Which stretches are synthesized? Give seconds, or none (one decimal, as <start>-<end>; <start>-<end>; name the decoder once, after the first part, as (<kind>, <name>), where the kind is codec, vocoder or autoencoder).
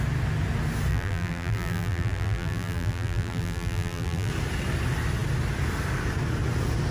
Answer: 0.9-4.3 (vocoder, BigVGAN v2)